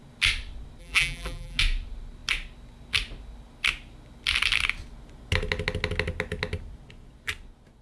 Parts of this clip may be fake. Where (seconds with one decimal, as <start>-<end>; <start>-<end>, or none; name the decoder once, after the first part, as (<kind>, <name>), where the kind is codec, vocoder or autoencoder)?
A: 0.8-1.6 (vocoder, BigVGAN v2)